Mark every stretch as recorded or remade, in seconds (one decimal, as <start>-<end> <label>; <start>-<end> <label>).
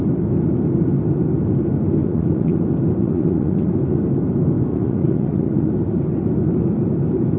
0.0-2.0 recorded; 2.0-2.6 remade; 2.6-3.0 recorded; 3.0-3.7 remade; 3.7-4.7 recorded; 4.7-5.7 remade; 5.7-7.4 recorded